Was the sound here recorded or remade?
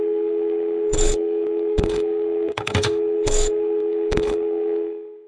remade